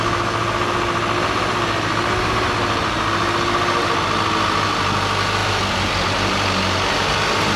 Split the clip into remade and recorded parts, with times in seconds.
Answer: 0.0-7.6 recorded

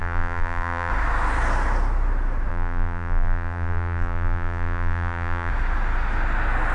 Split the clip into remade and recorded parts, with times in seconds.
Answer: 0.0-0.9 remade; 0.9-2.5 recorded; 2.5-5.5 remade; 5.5-6.7 recorded

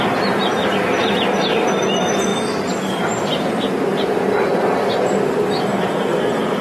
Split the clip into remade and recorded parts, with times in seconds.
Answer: 0.0-2.3 recorded; 2.3-2.9 remade; 2.9-5.7 recorded; 5.7-6.6 remade